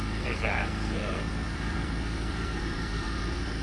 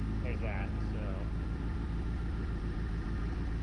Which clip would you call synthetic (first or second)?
first